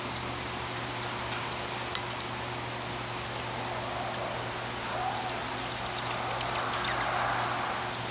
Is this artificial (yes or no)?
no